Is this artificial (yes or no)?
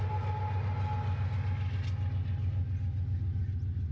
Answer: no